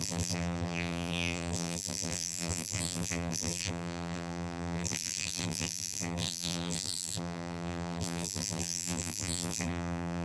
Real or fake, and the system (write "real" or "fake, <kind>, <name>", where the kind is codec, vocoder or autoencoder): fake, vocoder, BigVGAN v2